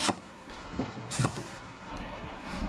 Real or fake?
fake